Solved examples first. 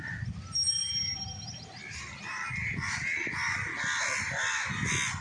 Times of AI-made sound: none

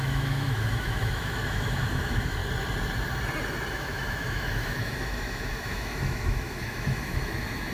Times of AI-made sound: 0.0-2.4 (autoencoder, DAC-VAE); 3.7-7.7